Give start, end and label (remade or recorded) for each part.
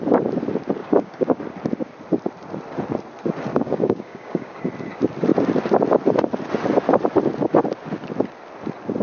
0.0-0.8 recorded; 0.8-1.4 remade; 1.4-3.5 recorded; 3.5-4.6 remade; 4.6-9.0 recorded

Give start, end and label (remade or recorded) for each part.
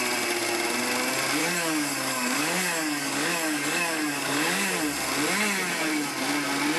0.0-1.4 recorded; 1.4-4.8 remade; 4.8-6.8 recorded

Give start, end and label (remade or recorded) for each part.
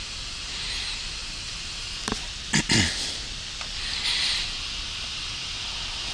0.0-6.1 recorded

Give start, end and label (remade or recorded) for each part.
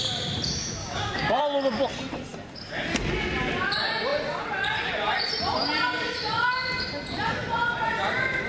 0.0-0.8 recorded; 0.8-1.4 remade; 1.4-8.5 recorded